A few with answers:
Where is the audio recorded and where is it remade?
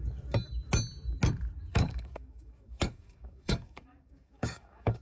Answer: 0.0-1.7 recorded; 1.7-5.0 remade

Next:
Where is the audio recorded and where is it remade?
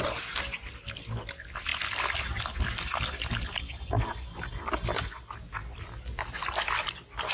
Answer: 0.0-7.3 recorded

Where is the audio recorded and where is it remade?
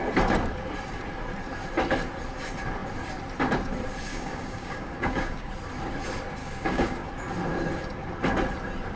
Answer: 0.0-4.1 recorded; 4.1-5.5 remade; 5.5-6.4 recorded; 6.4-7.1 remade; 7.1-9.0 recorded